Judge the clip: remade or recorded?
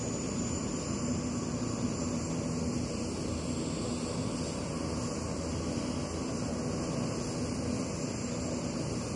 recorded